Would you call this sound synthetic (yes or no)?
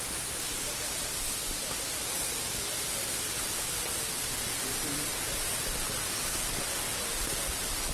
no